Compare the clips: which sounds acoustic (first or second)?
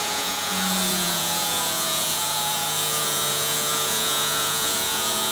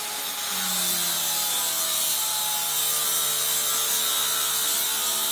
second